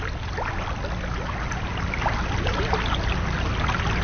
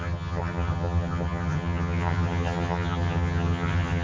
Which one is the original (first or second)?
first